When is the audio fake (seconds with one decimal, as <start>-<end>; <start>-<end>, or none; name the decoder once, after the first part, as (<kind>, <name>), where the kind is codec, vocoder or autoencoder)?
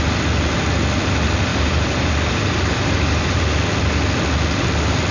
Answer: 1.5-3.4 (vocoder, BigVGAN v2)